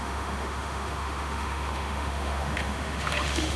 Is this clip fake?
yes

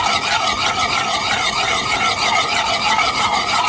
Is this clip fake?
no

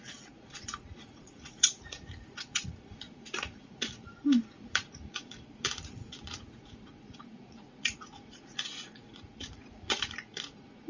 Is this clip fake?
yes